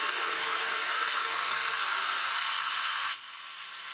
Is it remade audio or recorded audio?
remade